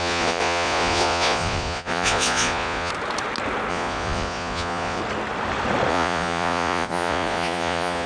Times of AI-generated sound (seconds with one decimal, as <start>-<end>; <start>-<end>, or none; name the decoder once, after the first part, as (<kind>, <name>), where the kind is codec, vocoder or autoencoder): 0.0-2.9 (vocoder, Vocos); 3.7-5.0; 5.9-8.1

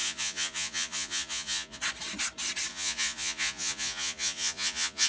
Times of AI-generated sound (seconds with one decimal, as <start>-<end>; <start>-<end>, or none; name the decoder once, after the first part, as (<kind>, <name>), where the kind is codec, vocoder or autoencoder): 0.0-1.8 (vocoder, Vocos); 2.7-5.1

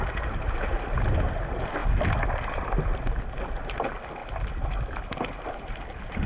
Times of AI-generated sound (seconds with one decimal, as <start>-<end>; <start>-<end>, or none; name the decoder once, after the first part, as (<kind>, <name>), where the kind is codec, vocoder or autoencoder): none

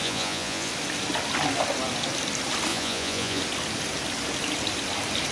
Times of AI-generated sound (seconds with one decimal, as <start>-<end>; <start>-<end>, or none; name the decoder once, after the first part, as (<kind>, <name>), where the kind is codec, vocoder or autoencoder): 0.0-0.7 (vocoder, Vocos); 2.7-3.4